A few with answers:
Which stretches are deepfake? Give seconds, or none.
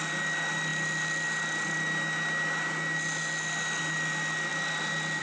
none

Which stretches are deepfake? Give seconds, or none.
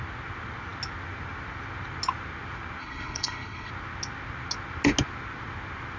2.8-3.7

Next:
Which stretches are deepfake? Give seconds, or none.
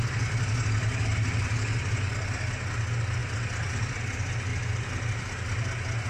1.1-2.1; 3.2-4.0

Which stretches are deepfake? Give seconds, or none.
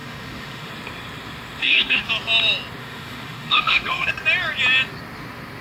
0.0-0.7; 1.6-2.1; 2.8-4.1